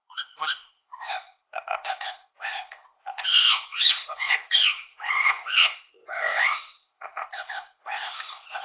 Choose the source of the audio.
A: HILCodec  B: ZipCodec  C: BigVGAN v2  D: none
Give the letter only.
B